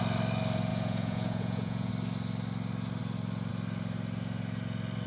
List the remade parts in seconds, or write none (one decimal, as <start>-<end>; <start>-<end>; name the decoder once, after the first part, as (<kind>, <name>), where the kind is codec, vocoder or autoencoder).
0.7-1.9 (vocoder, Vocos)